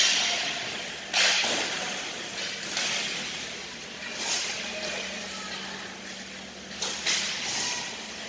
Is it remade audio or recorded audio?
recorded